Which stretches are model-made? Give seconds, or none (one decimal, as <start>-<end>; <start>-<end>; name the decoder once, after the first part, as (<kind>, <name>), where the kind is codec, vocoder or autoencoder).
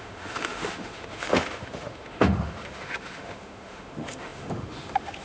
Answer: 0.0-5.2 (autoencoder, DAC-VAE)